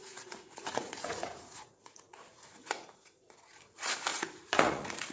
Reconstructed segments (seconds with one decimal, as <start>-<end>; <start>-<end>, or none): 0.0-3.1; 4.1-5.1